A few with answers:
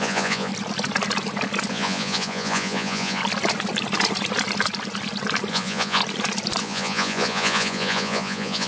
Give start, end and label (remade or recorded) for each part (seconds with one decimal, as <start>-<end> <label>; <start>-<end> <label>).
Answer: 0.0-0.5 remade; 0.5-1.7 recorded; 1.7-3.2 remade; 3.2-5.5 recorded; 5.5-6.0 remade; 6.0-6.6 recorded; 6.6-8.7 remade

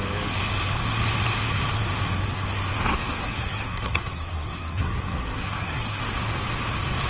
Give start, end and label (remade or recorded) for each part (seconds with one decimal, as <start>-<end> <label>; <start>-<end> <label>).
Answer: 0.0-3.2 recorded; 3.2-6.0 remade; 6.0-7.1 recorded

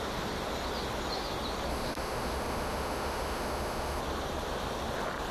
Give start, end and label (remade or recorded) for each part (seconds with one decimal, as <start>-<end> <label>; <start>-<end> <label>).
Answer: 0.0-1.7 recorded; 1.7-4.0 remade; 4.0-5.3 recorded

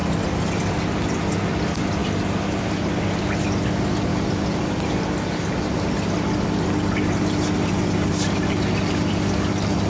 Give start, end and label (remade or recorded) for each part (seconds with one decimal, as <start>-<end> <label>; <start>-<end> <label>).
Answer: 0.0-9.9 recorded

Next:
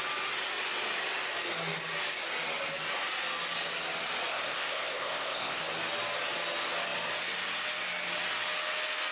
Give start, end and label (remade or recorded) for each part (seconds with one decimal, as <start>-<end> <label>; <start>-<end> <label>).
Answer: 0.0-4.3 recorded; 4.3-5.6 remade; 5.6-9.1 recorded

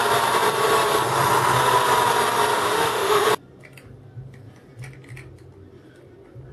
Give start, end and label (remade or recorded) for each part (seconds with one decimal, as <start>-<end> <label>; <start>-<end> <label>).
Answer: 0.0-2.5 recorded; 2.5-3.3 remade; 3.3-6.5 recorded